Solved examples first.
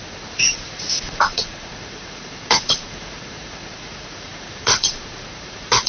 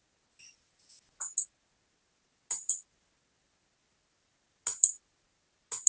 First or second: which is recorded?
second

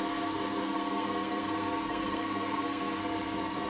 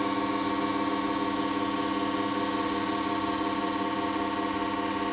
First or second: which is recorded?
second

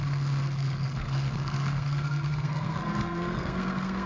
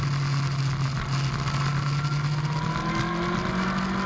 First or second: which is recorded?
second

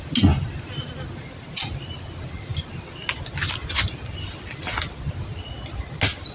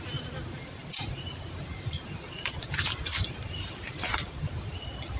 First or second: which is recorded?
first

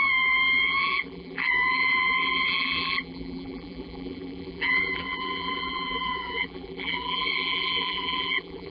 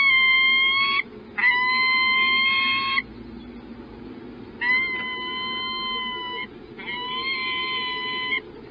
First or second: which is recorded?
second